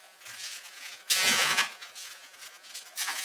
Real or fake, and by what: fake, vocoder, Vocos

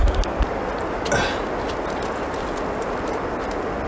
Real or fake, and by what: real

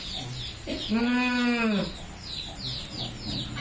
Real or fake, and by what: real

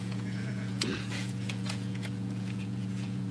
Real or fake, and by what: fake, vocoder, Vocos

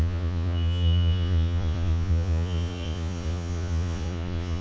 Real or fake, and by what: fake, vocoder, Vocos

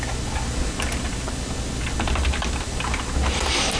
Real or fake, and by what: real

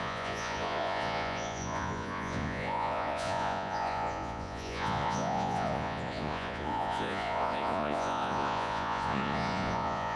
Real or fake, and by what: fake, vocoder, Vocos